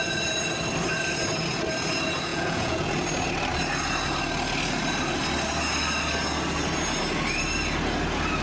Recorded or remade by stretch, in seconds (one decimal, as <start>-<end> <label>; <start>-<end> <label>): 0.0-2.3 recorded; 2.3-2.9 remade; 2.9-8.4 recorded